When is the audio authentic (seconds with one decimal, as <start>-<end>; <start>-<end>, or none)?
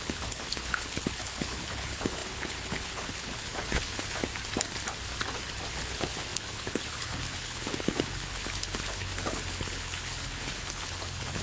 4.2-5.7